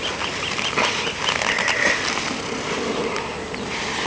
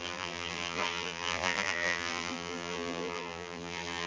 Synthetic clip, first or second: second